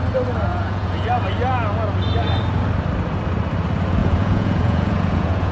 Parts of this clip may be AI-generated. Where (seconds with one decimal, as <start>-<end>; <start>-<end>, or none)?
0.5-1.1; 4.0-5.5